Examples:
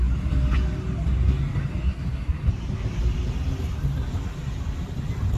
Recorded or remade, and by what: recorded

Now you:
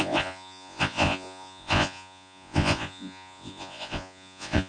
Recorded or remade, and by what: remade, vocoder, Vocos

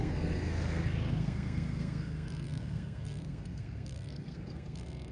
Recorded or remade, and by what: remade, codec, SNAC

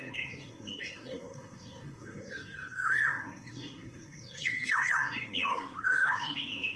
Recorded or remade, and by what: remade, codec, SNAC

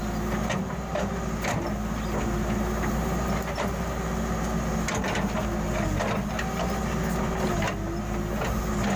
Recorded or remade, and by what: recorded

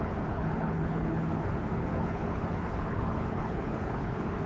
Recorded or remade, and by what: remade, codec, HILCodec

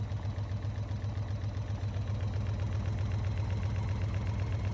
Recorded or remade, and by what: recorded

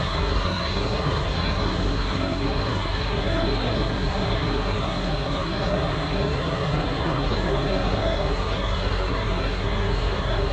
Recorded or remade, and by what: remade, codec, SNAC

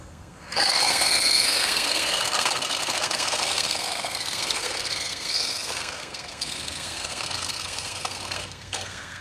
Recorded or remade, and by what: remade, codec, SNAC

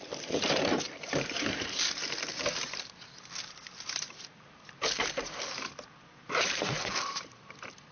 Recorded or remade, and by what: remade, vocoder, BigVGAN v2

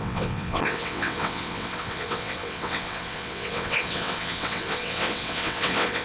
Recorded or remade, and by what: remade, vocoder, WaveNeXt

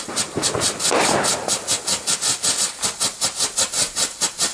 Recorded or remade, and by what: recorded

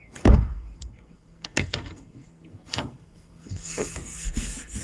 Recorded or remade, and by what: remade, codec, SNAC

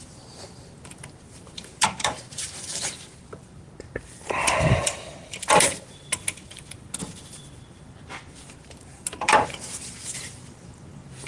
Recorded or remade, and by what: remade, vocoder, BigVGAN v2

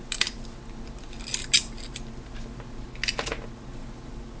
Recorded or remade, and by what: recorded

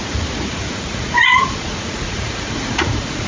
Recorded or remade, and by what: remade, vocoder, Vocos